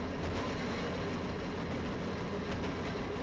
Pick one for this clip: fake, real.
real